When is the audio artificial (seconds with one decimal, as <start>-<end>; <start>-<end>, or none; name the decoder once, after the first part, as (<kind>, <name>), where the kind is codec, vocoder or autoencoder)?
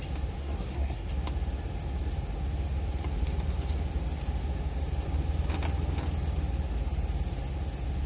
0.4-1.1 (codec, SNAC)